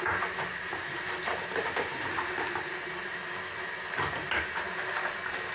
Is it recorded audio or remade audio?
recorded